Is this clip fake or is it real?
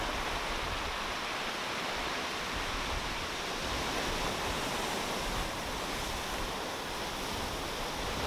fake